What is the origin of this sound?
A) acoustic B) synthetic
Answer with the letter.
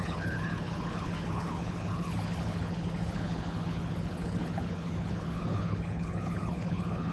B